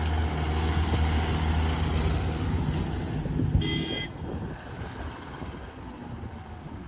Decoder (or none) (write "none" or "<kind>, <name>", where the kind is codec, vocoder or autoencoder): none